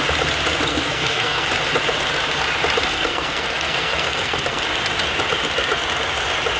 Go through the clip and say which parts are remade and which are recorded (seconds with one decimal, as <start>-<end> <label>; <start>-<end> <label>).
0.0-0.7 recorded; 0.7-1.5 remade; 1.5-2.9 recorded; 2.9-4.6 remade; 4.6-6.6 recorded